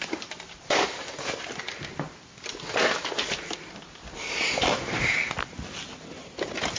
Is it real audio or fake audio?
real